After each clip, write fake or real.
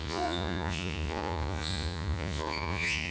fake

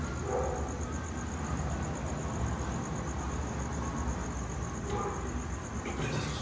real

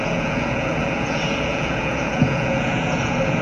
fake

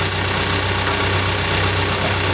real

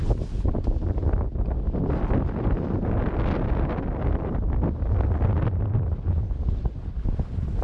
real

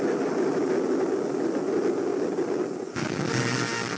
real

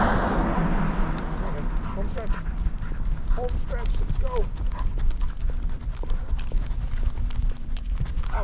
real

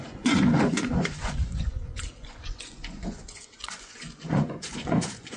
fake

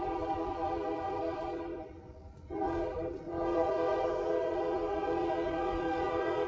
fake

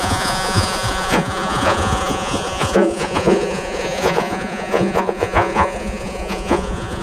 fake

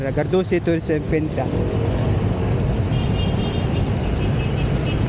real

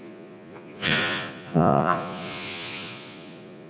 fake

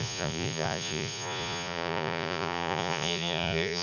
fake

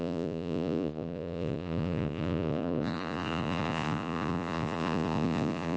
fake